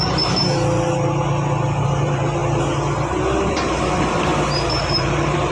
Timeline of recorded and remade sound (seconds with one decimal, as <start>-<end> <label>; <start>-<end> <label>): 0.0-0.4 remade; 0.4-1.8 recorded; 1.8-2.4 remade; 2.4-3.4 recorded; 3.4-4.3 remade; 4.3-4.8 recorded; 4.8-5.5 remade